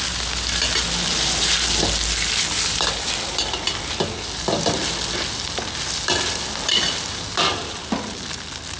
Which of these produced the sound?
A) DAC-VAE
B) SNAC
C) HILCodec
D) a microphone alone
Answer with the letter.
D